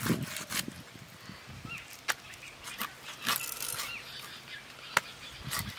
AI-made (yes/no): no